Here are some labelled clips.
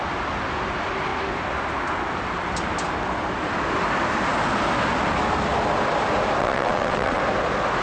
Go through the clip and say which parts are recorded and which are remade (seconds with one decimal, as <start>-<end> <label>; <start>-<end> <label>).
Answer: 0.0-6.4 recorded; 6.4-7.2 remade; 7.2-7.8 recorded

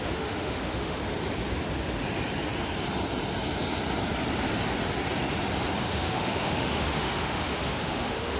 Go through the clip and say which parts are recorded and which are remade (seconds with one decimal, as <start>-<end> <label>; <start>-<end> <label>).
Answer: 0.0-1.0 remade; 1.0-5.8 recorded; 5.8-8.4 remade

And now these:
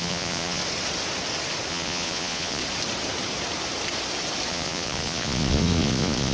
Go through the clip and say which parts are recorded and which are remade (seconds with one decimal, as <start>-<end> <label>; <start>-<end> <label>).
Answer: 0.0-0.6 remade; 0.6-1.7 recorded; 1.7-2.6 remade; 2.6-4.5 recorded; 4.5-6.3 remade

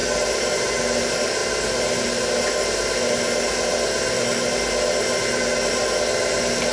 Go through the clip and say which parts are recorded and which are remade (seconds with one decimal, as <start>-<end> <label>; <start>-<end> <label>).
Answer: 0.0-6.7 recorded

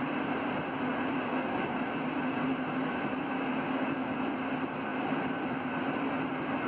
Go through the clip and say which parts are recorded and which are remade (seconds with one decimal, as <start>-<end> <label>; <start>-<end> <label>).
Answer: 0.0-4.9 recorded; 4.9-5.7 remade; 5.7-6.7 recorded

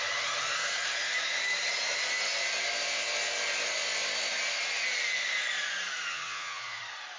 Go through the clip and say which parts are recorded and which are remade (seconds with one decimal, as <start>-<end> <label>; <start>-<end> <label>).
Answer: 0.0-6.1 recorded; 6.1-6.8 remade; 6.8-7.2 recorded

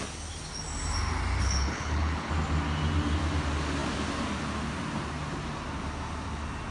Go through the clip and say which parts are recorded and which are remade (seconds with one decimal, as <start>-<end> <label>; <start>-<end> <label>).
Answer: 0.0-1.4 recorded; 1.4-2.3 remade; 2.3-6.7 recorded